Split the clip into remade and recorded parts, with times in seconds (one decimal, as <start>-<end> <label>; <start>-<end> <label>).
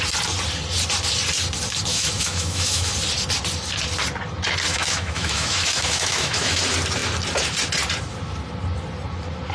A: 0.0-1.9 recorded; 1.9-2.9 remade; 2.9-4.7 recorded; 4.7-6.6 remade; 6.6-9.5 recorded